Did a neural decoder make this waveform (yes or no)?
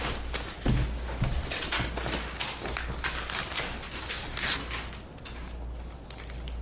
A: no